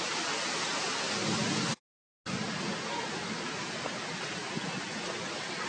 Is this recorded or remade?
recorded